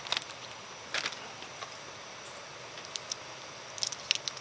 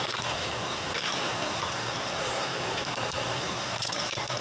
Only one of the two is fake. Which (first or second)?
second